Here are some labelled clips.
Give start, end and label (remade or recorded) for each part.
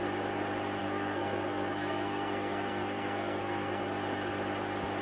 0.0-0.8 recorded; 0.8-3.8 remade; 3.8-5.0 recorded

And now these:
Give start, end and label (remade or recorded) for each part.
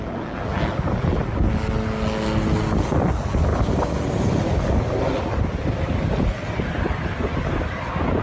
0.0-8.2 recorded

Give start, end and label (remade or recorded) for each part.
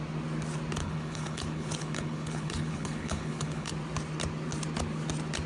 0.0-0.8 recorded; 0.8-3.7 remade; 3.7-5.5 recorded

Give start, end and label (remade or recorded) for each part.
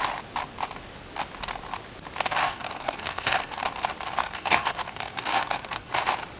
0.0-2.4 recorded; 2.4-3.6 remade; 3.6-4.2 recorded; 4.2-5.9 remade; 5.9-6.4 recorded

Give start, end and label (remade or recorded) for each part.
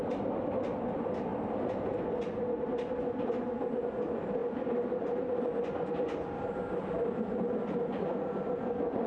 0.0-9.1 recorded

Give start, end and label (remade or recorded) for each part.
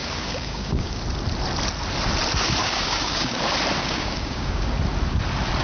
0.0-1.0 remade; 1.0-2.6 recorded; 2.6-3.4 remade; 3.4-3.8 recorded; 3.8-4.7 remade; 4.7-5.6 recorded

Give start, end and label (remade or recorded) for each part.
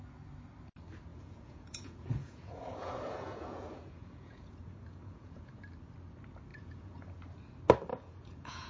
0.0-1.1 recorded; 1.1-5.5 remade; 5.5-6.5 recorded; 6.5-7.2 remade; 7.2-7.9 recorded; 7.9-8.7 remade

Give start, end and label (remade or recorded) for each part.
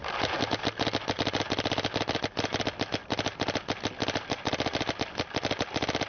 0.0-6.1 recorded